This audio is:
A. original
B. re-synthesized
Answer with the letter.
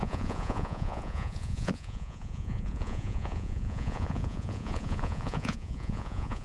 B